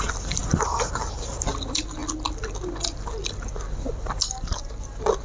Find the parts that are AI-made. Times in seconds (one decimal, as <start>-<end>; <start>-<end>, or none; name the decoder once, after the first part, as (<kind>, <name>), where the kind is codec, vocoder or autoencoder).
none